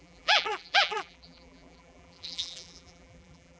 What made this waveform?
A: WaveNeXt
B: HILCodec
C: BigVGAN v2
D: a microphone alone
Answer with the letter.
C